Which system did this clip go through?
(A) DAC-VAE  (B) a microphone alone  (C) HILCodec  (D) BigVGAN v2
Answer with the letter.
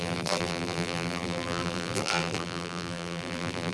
D